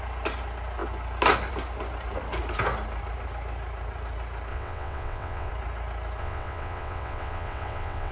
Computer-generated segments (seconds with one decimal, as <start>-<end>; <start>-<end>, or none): 4.5-5.5; 6.2-8.1